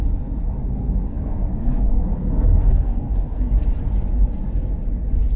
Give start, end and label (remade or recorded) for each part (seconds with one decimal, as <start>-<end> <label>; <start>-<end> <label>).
0.0-0.6 recorded; 0.6-3.5 remade; 3.5-5.4 recorded